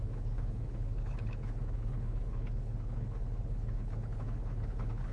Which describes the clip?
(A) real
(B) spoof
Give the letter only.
B